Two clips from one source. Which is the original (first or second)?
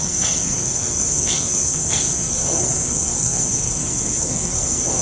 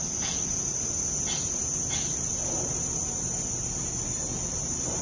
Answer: second